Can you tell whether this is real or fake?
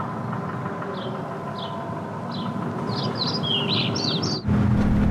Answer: real